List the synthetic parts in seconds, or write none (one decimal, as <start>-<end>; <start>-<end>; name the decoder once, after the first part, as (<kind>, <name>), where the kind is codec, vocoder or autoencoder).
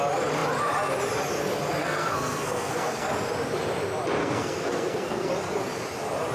1.8-3.1 (codec, SNAC); 4.2-5.3